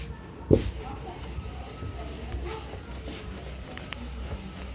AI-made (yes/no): no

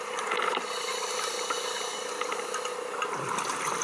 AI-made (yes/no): no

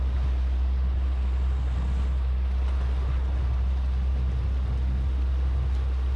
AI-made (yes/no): no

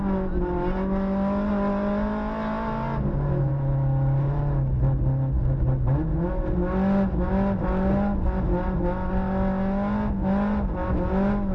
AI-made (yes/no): no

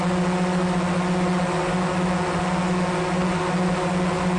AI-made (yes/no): no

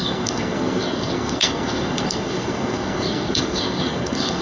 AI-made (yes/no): yes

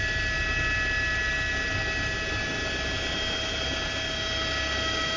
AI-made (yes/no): no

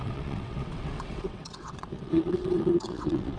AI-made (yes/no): yes